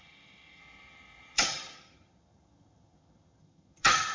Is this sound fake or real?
fake